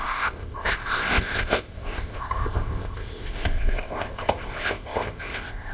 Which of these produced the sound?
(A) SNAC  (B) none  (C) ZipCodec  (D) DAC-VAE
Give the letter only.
C